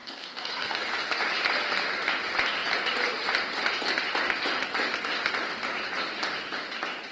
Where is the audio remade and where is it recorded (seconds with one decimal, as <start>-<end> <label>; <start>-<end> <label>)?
0.0-0.9 remade; 0.9-7.1 recorded